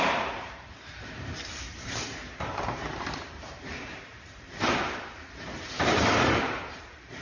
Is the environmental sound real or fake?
fake